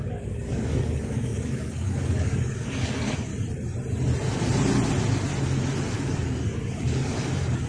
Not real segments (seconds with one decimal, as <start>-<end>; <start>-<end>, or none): 0.0-3.3; 5.9-7.7